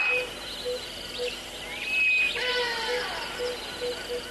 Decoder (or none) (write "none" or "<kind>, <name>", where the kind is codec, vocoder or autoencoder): none